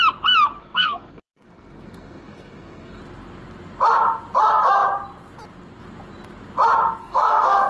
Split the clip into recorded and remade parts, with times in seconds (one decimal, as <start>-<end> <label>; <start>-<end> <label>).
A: 0.0-0.6 recorded; 0.6-3.0 remade; 3.0-7.0 recorded; 7.0-7.7 remade